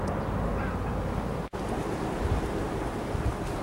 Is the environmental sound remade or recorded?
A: recorded